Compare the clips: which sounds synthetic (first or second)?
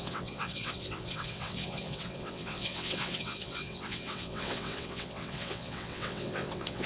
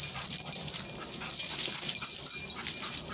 first